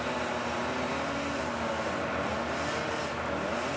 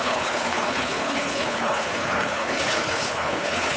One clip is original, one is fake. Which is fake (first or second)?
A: second